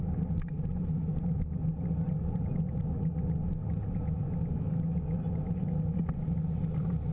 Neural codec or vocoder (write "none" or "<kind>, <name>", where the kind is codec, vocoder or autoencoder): none